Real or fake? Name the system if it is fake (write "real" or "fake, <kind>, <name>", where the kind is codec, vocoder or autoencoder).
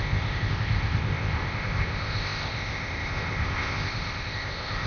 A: fake, codec, ZipCodec